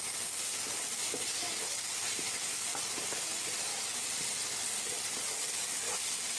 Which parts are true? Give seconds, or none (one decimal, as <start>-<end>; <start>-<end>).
0.0-6.4